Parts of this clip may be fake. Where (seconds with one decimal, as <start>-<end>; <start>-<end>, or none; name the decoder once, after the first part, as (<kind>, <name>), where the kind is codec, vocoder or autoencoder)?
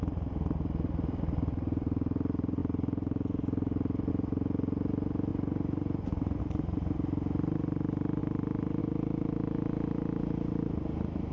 5.3-6.4 (vocoder, Vocos)